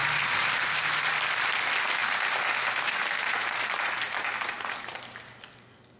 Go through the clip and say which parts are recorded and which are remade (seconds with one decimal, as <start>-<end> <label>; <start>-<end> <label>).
0.0-1.0 remade; 1.0-2.0 recorded; 2.0-5.4 remade; 5.4-6.0 recorded